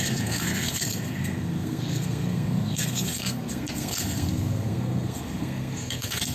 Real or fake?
fake